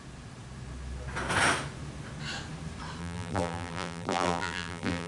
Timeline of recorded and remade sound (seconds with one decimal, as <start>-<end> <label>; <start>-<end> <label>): 0.0-3.0 recorded; 3.0-5.1 remade